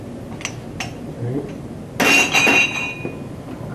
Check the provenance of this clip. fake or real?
real